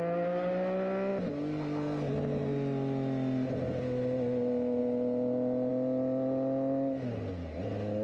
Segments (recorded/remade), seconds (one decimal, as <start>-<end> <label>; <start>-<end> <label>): 0.0-8.0 recorded